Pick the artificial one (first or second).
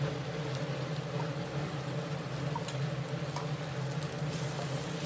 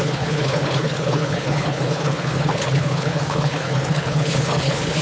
second